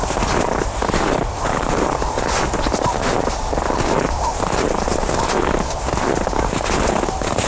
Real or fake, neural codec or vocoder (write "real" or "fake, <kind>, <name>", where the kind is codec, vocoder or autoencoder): real